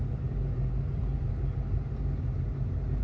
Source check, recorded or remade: recorded